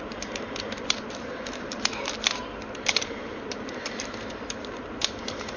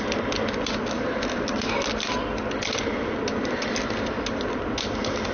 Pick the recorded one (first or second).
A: second